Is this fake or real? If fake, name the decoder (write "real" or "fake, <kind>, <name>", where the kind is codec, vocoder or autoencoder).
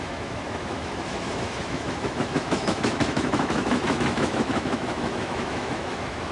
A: fake, autoencoder, DAC-VAE